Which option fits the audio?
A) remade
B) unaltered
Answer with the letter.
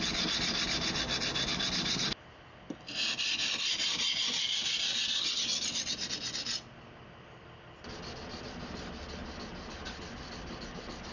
B